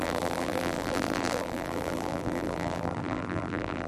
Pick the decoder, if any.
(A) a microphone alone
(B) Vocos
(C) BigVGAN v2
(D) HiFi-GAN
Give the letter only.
C